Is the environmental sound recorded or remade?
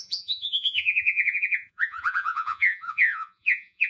remade